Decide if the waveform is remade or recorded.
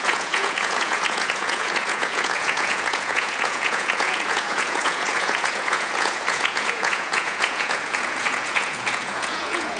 remade